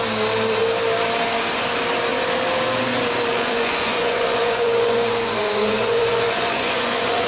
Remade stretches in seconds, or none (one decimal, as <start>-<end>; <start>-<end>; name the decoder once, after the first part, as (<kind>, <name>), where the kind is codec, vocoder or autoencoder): 3.3-7.3 (vocoder, Vocos)